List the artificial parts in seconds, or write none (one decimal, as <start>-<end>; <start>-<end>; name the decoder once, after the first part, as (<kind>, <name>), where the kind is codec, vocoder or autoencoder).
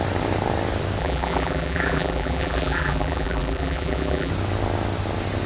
1.0-4.3 (vocoder, BigVGAN v2)